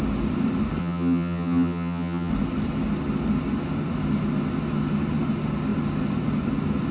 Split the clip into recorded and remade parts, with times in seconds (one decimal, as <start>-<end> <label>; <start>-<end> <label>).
0.0-0.8 recorded; 0.8-2.3 remade; 2.3-6.9 recorded